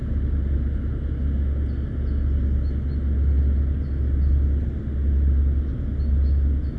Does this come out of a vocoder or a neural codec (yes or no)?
no